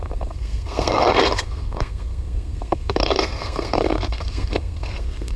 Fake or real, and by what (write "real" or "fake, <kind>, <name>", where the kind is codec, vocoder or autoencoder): fake, codec, SNAC